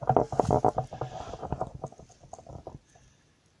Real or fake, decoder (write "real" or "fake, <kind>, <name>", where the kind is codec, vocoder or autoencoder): real